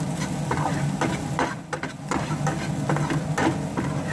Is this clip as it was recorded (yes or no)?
yes